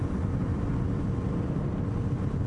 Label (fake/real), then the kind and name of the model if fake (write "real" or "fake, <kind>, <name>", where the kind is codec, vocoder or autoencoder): fake, vocoder, BigVGAN v2